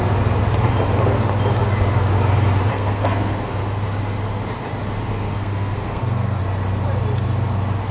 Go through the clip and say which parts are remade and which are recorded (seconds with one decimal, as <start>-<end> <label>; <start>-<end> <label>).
0.0-2.7 recorded; 2.7-3.6 remade; 3.6-5.1 recorded; 5.1-6.4 remade; 6.4-7.9 recorded